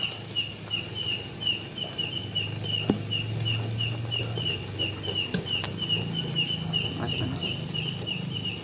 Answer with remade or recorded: recorded